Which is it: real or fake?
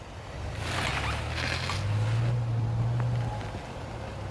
real